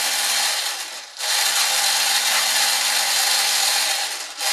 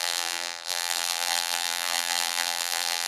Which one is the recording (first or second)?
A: first